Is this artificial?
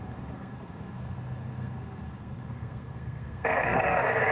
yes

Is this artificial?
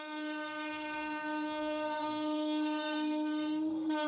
yes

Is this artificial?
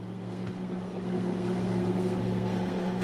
yes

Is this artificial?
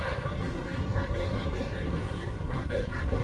yes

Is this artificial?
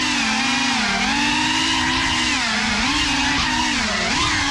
no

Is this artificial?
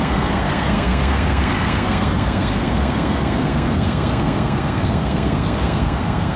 yes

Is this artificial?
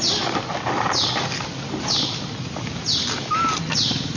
no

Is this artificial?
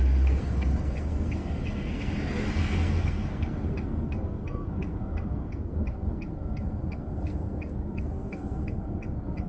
yes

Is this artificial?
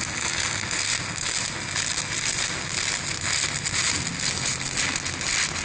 no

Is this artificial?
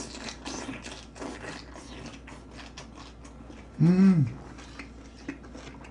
no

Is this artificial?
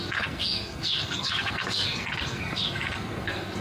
yes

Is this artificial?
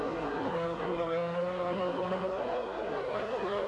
yes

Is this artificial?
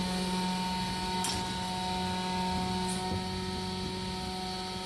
no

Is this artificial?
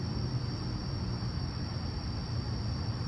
no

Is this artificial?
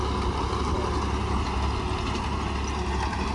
no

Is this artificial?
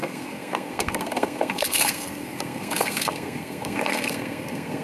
yes